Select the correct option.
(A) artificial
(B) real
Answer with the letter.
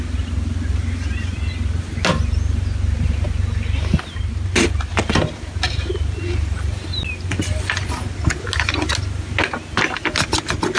B